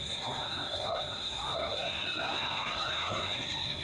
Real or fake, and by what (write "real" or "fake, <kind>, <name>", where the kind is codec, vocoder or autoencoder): fake, codec, SNAC